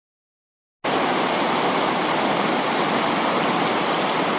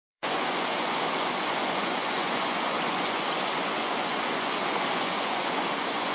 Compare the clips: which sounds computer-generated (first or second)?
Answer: second